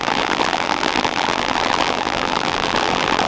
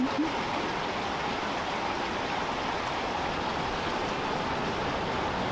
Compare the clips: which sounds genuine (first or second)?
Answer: second